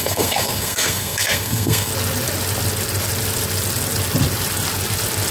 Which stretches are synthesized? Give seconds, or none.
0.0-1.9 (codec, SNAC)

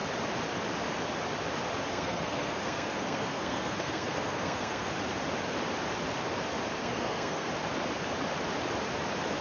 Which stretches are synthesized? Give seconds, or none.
1.9-4.9 (codec, SNAC); 6.8-7.5

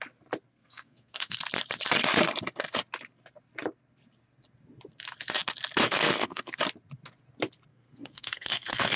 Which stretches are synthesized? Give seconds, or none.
0.5-1.4 (codec, SNAC); 5.8-6.6; 7.7-9.0

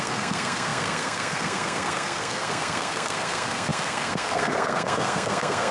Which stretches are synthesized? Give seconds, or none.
0.0-5.7 (codec, SNAC)

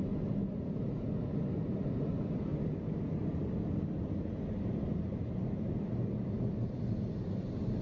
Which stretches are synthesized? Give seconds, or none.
none

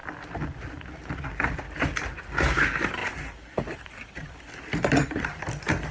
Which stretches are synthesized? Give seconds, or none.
3.0-5.4 (vocoder, BigVGAN v2)

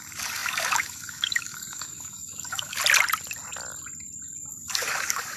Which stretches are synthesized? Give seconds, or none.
0.0-2.8 (codec, DAC); 4.5-5.4